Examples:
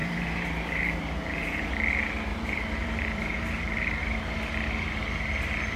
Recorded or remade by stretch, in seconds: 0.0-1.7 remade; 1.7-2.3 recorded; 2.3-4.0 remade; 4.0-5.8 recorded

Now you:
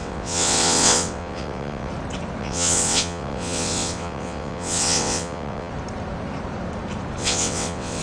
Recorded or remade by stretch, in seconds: 0.0-1.9 remade; 1.9-2.4 recorded; 2.4-5.7 remade; 5.7-7.2 recorded; 7.2-8.0 remade

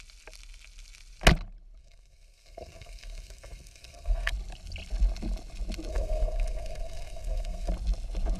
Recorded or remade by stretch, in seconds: 0.0-1.8 recorded; 1.8-4.3 remade; 4.3-5.9 recorded; 5.9-7.7 remade; 7.7-8.4 recorded

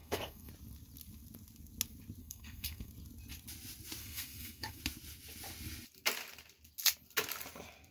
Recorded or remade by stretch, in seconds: 0.0-0.5 remade; 0.5-2.2 recorded; 2.2-2.9 remade; 2.9-4.0 recorded; 4.0-4.8 remade; 4.8-7.9 recorded